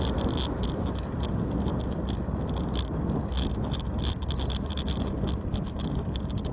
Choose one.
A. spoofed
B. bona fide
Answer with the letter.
B